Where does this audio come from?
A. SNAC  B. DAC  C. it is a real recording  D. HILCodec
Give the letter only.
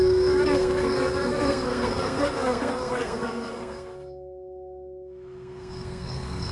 A